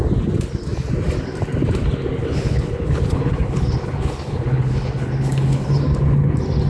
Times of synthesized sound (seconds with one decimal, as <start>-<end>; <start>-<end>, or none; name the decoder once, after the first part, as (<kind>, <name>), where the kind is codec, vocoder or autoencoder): 2.2-5.8 (codec, HILCodec)